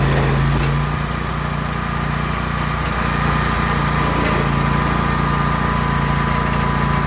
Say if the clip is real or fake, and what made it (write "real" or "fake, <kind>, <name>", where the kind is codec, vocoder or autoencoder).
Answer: real